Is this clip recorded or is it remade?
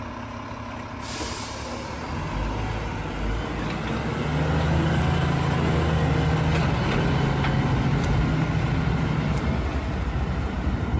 recorded